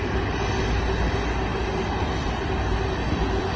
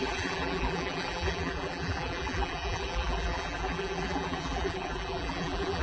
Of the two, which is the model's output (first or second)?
second